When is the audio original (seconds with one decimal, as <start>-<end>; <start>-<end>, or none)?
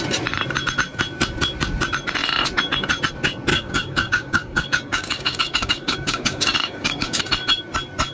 0.0-3.5; 7.2-8.1